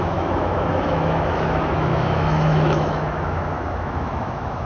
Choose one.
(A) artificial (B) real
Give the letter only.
A